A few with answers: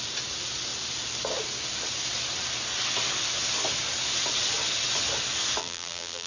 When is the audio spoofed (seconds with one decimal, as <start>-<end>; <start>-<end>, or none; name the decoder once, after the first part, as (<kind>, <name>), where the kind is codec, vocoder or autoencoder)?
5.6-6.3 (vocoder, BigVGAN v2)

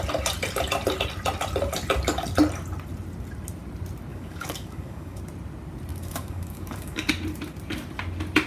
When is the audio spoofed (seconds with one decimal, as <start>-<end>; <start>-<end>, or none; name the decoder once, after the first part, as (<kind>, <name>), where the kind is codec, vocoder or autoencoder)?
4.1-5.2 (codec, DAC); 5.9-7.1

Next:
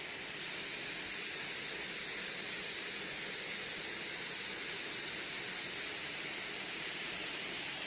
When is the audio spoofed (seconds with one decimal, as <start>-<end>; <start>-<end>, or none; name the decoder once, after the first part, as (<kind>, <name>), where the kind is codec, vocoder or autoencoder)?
0.0-0.7 (vocoder, BigVGAN v2); 3.2-3.7; 4.9-7.9

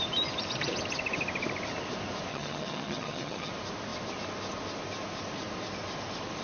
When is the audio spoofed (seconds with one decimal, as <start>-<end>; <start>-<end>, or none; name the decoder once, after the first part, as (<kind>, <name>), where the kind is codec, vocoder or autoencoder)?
2.3-3.5 (vocoder, HiFi-GAN)

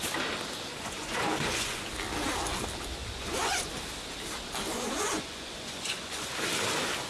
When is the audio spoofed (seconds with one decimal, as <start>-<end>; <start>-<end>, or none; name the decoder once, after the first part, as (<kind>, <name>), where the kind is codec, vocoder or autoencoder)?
0.7-1.8 (vocoder, Vocos); 3.0-3.7; 4.7-6.3

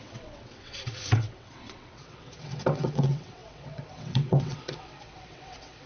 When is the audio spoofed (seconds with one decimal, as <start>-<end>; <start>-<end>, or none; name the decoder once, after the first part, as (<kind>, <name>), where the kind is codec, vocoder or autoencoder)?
0.0-5.9 (vocoder, WaveNeXt)

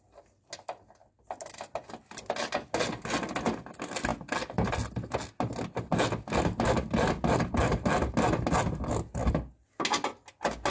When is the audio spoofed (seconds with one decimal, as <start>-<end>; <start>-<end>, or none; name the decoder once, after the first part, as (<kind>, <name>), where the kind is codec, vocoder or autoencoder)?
none